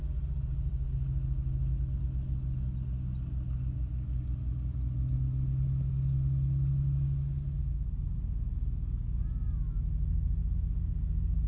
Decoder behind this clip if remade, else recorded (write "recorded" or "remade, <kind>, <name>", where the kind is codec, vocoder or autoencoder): recorded